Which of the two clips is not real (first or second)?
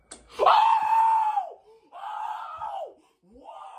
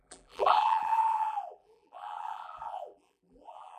second